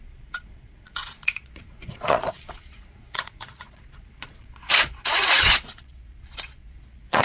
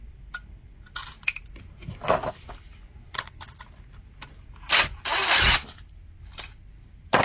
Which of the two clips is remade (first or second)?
first